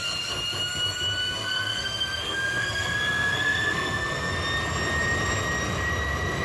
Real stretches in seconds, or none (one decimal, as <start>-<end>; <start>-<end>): 0.0-1.2; 4.3-6.4